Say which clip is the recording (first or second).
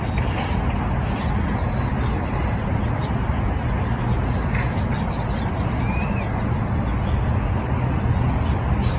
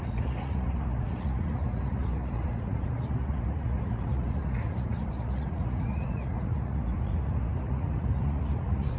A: first